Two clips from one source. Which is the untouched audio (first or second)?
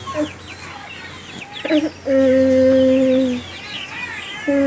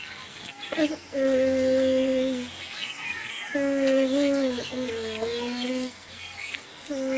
first